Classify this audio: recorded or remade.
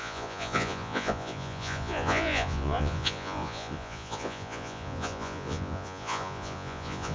remade